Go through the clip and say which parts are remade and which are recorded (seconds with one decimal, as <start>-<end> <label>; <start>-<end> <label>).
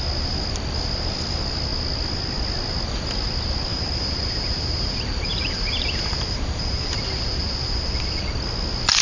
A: 0.0-3.7 recorded; 3.7-8.2 remade; 8.2-9.0 recorded